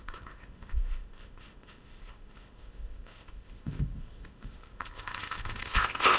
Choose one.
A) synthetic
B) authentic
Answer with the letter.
A